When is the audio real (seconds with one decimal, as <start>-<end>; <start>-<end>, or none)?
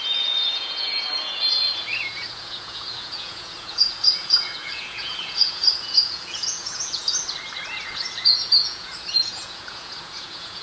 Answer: 7.0-7.8